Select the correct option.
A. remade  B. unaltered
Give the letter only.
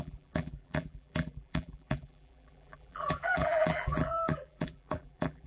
A